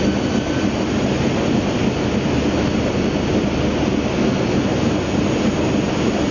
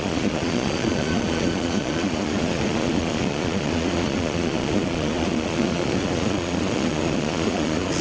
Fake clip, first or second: second